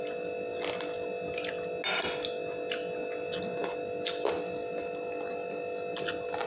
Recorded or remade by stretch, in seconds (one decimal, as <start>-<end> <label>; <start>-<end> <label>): 0.0-6.5 recorded